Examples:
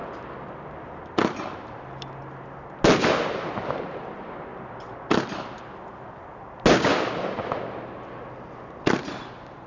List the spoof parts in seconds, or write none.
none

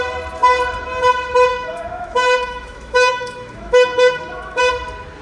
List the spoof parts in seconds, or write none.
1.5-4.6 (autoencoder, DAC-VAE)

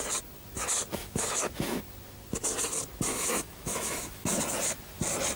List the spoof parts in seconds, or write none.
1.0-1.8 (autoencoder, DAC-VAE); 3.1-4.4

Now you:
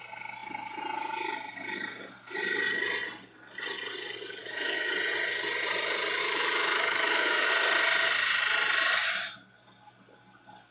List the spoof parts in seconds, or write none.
4.4-4.9 (autoencoder, DAC-VAE); 6.2-7.5

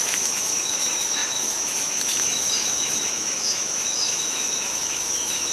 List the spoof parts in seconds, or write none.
0.0-5.5 (autoencoder, DAC-VAE)

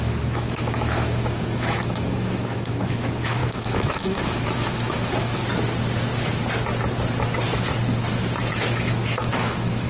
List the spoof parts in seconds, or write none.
0.0-5.4 (autoencoder, DAC-VAE); 8.5-9.9

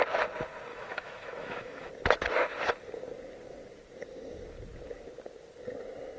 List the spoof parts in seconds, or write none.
0.7-1.9 (autoencoder, DAC-VAE)

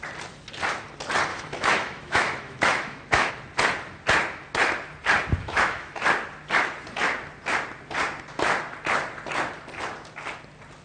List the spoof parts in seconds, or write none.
1.3-3.3 (autoencoder, DAC-VAE); 5.4-6.0